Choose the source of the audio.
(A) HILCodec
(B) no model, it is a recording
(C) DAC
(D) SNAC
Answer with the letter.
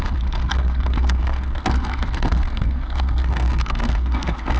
D